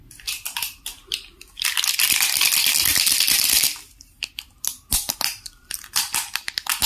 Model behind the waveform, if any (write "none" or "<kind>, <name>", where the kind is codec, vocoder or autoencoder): none